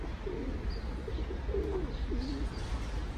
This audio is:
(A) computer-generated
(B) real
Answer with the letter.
B